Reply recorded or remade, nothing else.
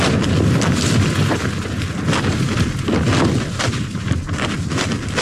recorded